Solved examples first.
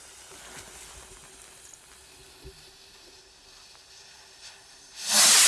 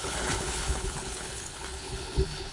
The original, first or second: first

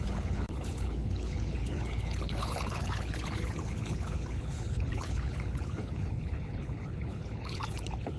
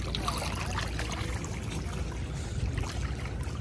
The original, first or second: second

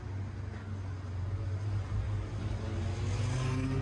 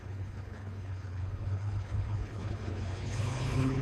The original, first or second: first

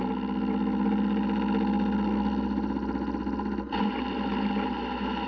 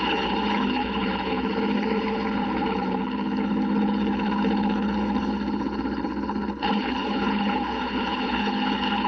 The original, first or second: first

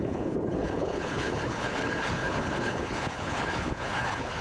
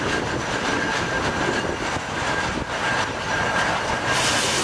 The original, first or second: second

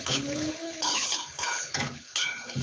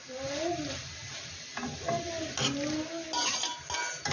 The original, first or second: second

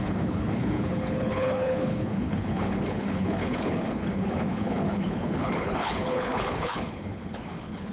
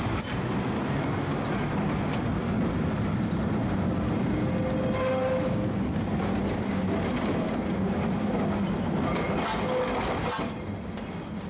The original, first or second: second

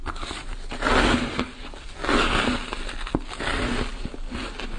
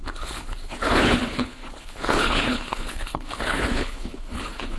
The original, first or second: first